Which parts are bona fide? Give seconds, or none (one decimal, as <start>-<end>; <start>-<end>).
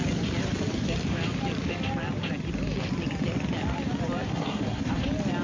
0.0-4.3; 4.9-5.4